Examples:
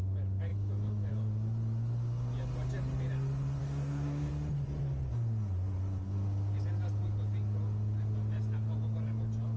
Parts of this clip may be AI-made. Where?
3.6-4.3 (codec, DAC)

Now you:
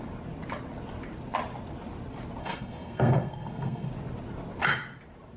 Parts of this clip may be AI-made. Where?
2.4-3.9 (codec, SNAC)

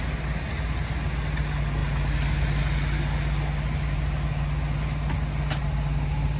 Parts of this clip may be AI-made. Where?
none

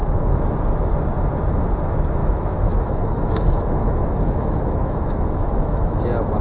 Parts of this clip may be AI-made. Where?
0.0-0.5 (autoencoder, DAC-VAE); 2.2-6.0

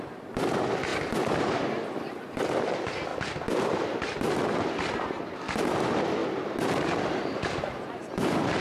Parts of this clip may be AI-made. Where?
0.0-3.1 (vocoder, BigVGAN v2); 3.8-6.2; 7.2-8.6